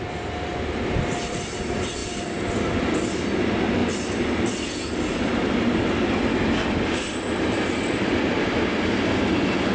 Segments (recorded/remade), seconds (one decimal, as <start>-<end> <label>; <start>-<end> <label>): 0.0-9.7 recorded